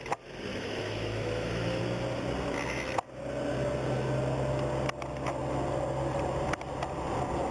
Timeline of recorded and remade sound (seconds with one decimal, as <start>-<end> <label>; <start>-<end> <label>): 0.0-0.5 recorded; 0.5-1.8 remade; 1.8-7.5 recorded